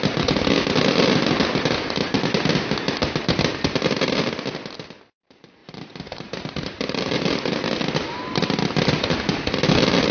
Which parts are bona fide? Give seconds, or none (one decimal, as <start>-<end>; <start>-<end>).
0.0-5.6; 7.7-10.1